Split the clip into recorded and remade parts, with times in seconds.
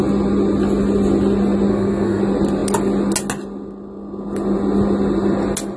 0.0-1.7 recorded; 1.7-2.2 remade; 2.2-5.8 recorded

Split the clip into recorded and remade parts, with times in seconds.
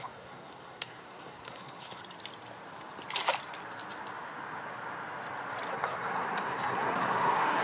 0.0-2.0 remade; 2.0-5.7 recorded; 5.7-7.6 remade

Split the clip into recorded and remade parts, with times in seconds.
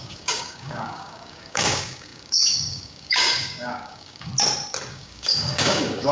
0.0-4.3 remade; 4.3-4.9 recorded; 4.9-6.1 remade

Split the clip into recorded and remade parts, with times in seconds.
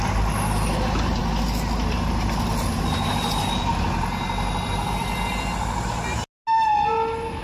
0.0-7.4 recorded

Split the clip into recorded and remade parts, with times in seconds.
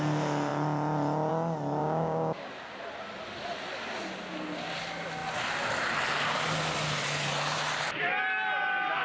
0.0-1.8 recorded; 1.8-2.5 remade; 2.5-9.0 recorded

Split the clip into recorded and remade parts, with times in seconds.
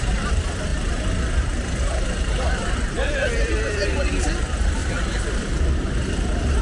0.0-0.7 remade; 0.7-1.4 recorded; 1.4-6.6 remade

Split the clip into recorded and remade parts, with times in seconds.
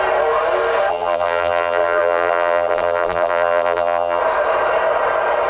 0.0-0.9 recorded; 0.9-4.2 remade; 4.2-5.5 recorded